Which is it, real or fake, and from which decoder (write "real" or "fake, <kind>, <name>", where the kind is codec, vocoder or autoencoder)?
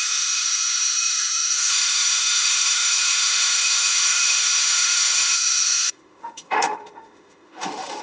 fake, autoencoder, DAC-VAE